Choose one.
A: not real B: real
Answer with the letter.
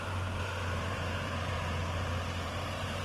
A